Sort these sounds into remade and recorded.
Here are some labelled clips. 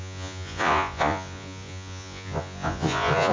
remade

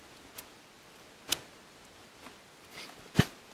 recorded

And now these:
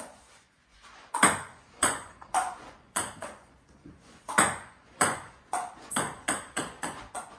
remade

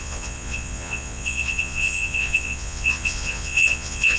remade